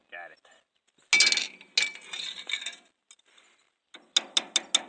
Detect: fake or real real